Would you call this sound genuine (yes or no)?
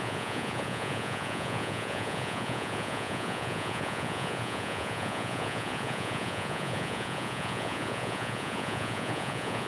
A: no